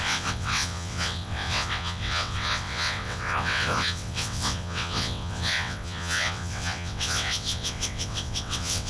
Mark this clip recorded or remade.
remade